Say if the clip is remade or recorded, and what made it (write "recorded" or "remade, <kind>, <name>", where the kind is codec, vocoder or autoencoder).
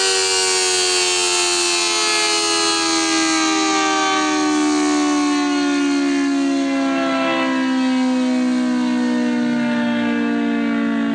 recorded